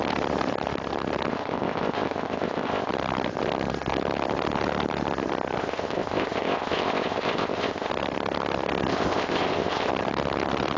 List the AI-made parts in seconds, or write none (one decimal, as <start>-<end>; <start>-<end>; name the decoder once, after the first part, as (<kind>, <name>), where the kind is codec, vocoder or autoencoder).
1.3-2.9 (codec, ZipCodec); 5.6-7.9; 8.9-9.9